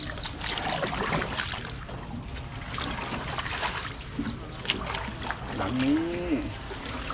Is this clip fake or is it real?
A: real